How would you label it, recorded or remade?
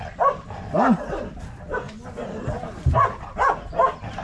recorded